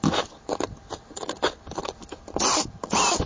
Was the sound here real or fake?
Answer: real